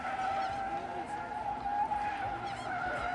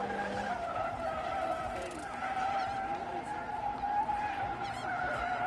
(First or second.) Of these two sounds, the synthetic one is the second